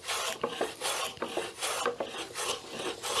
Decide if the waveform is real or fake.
real